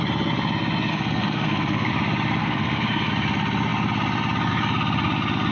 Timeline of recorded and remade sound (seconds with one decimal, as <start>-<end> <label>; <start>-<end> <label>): 0.0-0.9 recorded; 0.9-1.9 remade; 1.9-2.4 recorded; 2.4-3.1 remade; 3.1-5.5 recorded